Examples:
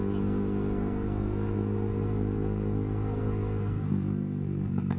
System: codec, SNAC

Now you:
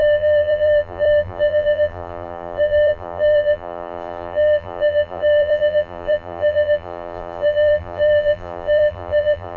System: vocoder, BigVGAN v2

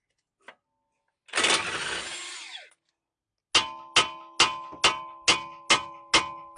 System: none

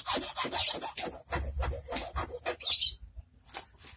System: none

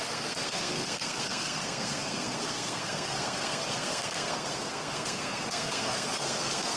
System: codec, SNAC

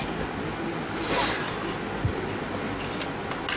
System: none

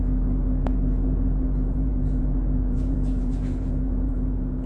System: vocoder, Vocos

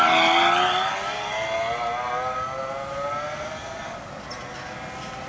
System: none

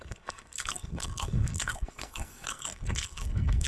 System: codec, SNAC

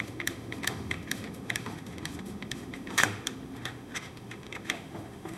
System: autoencoder, DAC-VAE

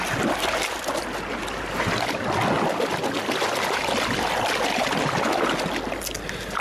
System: none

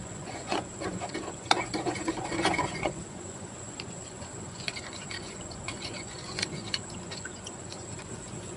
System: vocoder, Vocos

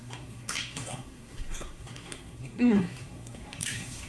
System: codec, SNAC